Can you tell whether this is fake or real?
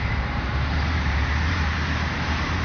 fake